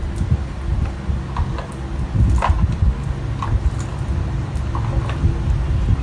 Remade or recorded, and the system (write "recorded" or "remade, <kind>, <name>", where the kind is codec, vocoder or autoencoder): recorded